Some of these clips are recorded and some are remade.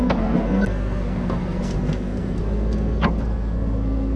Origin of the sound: remade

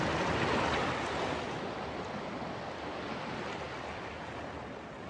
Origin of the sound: recorded